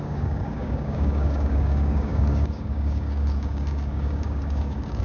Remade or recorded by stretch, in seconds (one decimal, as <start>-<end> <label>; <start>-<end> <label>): 0.0-5.0 remade